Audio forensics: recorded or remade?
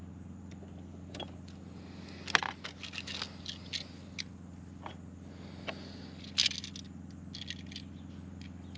recorded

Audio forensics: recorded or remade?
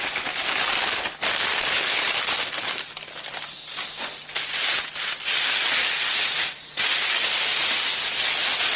recorded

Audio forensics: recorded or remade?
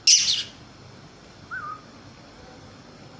recorded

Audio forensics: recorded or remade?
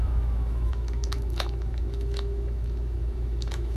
remade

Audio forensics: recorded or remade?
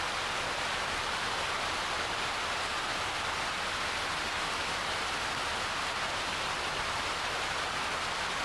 recorded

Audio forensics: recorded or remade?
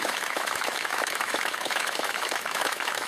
remade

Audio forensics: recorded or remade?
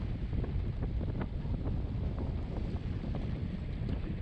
recorded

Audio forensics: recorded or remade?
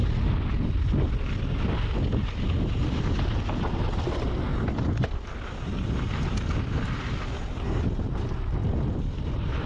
recorded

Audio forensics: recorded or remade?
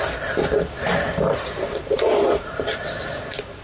recorded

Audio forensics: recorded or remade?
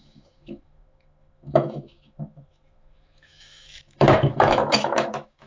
remade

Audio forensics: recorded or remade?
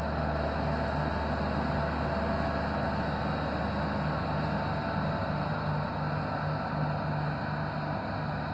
recorded